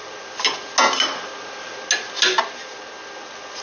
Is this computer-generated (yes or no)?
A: no